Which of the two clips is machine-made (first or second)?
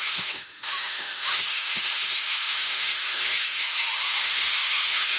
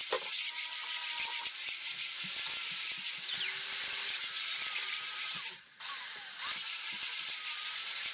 first